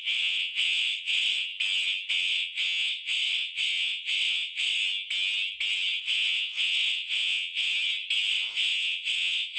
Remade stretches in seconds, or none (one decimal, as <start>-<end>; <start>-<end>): 0.0-1.5; 2.1-4.8; 6.0-7.7; 8.3-9.6